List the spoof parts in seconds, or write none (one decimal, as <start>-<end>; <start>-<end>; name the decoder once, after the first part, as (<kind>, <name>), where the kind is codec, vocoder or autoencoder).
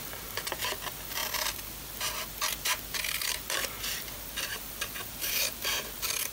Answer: 4.5-5.3 (vocoder, BigVGAN v2)